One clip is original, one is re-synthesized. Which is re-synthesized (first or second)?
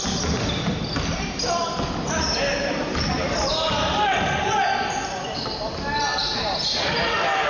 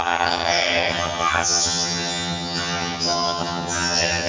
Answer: second